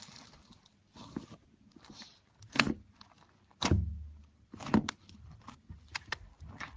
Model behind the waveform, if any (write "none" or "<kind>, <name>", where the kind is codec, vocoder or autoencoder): none